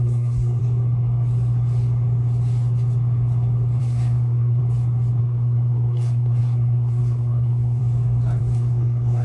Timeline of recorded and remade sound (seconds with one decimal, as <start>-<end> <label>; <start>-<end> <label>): 0.0-0.6 remade; 0.6-3.8 recorded; 3.8-4.6 remade; 4.6-5.2 recorded; 5.2-7.8 remade; 7.8-8.4 recorded; 8.4-9.2 remade